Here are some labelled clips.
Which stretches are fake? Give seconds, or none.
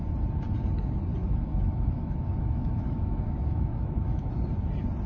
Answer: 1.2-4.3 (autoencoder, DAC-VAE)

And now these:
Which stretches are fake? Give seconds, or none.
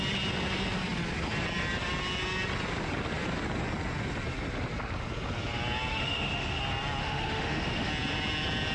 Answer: 5.9-6.6 (autoencoder, DAC-VAE); 7.0-7.9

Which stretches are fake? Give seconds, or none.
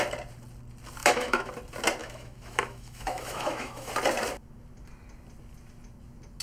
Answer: 1.0-1.5 (autoencoder, DAC-VAE); 2.0-3.9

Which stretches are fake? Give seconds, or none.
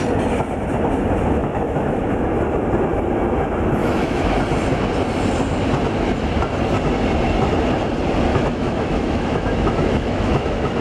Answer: 1.4-2.1 (autoencoder, DAC-VAE); 3.8-4.4; 8.3-10.8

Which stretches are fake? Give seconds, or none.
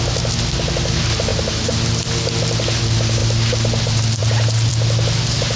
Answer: none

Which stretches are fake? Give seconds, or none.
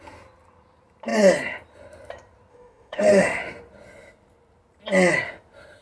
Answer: 2.5-3.4 (autoencoder, DAC-VAE)